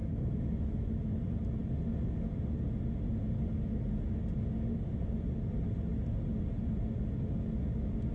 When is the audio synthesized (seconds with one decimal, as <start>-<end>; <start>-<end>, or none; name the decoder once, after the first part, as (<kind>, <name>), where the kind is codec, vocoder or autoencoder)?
0.0-1.2 (autoencoder, DAC-VAE)